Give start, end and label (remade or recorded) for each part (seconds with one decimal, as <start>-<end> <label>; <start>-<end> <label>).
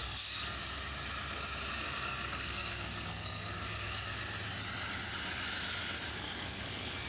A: 0.0-0.6 remade; 0.6-1.8 recorded; 1.8-4.2 remade; 4.2-6.1 recorded; 6.1-7.1 remade